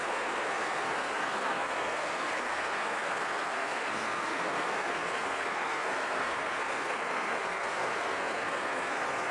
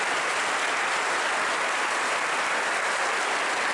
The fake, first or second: first